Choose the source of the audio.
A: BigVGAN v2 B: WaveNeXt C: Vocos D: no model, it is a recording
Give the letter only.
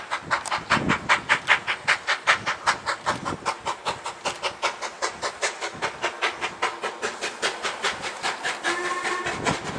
D